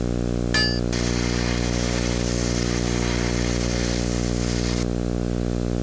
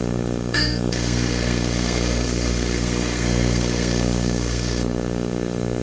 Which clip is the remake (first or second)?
second